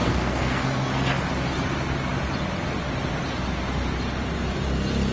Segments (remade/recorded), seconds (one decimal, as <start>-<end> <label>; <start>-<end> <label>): 0.0-1.3 remade; 1.3-5.1 recorded